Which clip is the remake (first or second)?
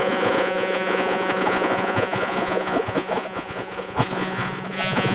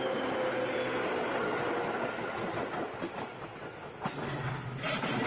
first